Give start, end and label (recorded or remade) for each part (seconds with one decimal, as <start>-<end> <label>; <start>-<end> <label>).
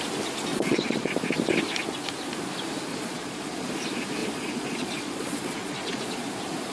0.0-0.5 recorded; 0.5-1.1 remade; 1.1-2.9 recorded; 2.9-3.7 remade; 3.7-4.2 recorded; 4.2-6.3 remade; 6.3-6.7 recorded